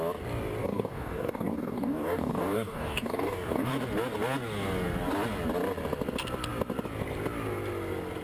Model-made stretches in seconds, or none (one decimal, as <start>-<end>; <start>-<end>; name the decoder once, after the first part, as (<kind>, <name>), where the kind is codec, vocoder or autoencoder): 0.6-3.7 (codec, DAC)